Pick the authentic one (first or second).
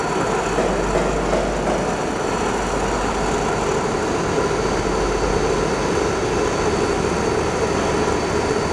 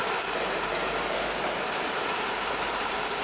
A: first